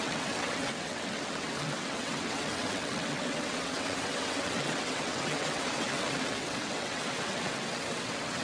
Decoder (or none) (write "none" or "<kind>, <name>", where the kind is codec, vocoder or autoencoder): vocoder, WaveNeXt